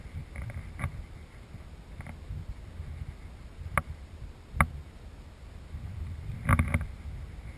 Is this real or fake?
real